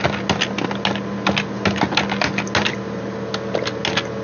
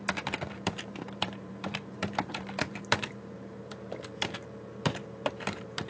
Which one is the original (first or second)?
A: first